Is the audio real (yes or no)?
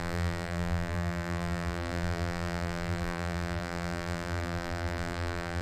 no